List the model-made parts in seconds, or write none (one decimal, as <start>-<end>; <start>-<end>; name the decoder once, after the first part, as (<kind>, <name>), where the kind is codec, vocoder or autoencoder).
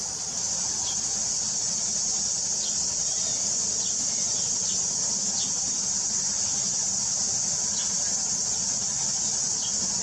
none